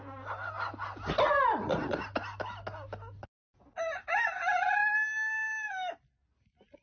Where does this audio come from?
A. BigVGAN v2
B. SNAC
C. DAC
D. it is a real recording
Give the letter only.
D